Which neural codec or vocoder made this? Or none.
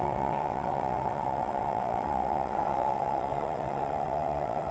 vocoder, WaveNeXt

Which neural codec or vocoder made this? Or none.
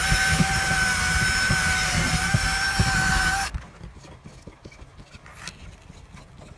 none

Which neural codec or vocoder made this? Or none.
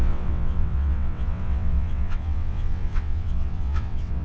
vocoder, WaveNeXt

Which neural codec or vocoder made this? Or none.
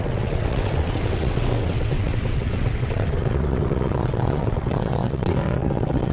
vocoder, WaveNeXt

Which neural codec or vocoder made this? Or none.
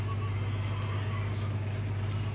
none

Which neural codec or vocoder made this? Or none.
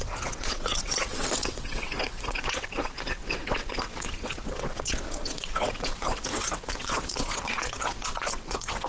vocoder, WaveNeXt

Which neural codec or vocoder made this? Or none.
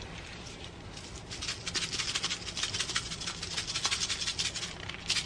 none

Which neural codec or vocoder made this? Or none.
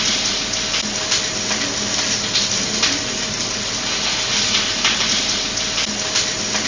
none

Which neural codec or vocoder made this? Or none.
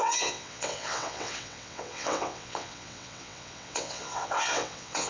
vocoder, WaveNeXt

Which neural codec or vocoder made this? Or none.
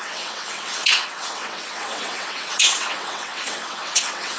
vocoder, WaveNeXt